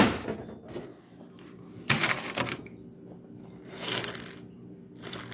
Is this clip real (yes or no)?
yes